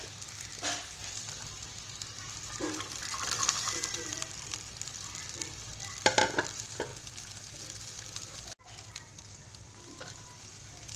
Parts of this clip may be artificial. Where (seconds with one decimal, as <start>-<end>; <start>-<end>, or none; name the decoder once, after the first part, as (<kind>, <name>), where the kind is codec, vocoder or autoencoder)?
1.0-4.9 (vocoder, BigVGAN v2)